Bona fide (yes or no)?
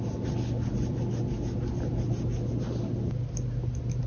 yes